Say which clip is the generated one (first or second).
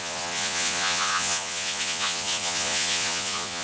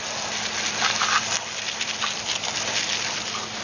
first